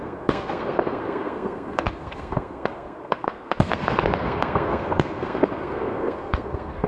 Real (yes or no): no